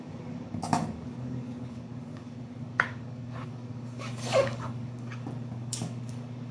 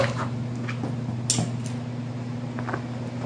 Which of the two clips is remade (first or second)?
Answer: first